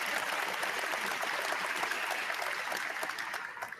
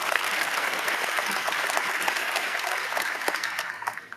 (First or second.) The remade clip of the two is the second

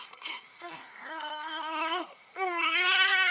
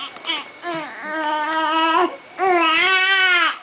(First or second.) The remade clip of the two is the first